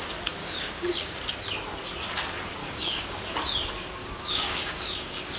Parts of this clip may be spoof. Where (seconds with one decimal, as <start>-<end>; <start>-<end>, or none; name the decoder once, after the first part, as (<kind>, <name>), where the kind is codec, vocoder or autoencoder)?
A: 0.4-1.2 (codec, DAC); 2.6-3.2; 4.0-5.4